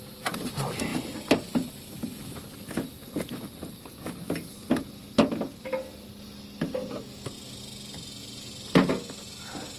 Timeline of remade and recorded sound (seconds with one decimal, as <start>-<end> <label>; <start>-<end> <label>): 0.0-8.2 recorded; 8.2-8.9 remade; 8.9-9.8 recorded